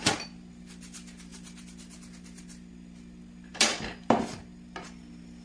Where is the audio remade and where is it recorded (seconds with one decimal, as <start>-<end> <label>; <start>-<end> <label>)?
0.0-5.4 recorded